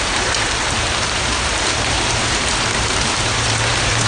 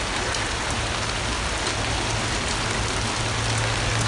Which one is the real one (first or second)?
second